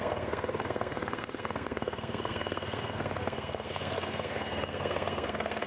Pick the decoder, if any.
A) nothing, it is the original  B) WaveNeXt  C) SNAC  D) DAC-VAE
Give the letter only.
C